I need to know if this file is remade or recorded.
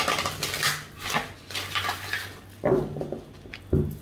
recorded